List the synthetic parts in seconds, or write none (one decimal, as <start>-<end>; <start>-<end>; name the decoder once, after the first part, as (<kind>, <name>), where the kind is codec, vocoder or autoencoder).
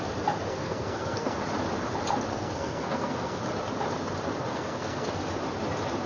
0.5-1.4 (codec, SNAC); 2.3-3.4; 4.5-5.1